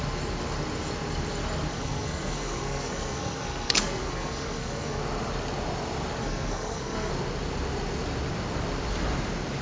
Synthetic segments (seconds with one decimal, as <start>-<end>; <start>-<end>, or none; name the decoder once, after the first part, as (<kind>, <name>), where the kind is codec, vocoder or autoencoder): 1.7-5.0 (codec, SNAC); 6.2-7.1